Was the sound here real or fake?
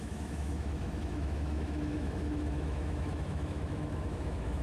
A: fake